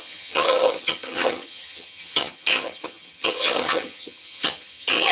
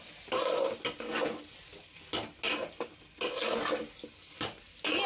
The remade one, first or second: first